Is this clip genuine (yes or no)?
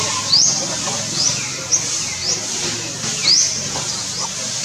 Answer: yes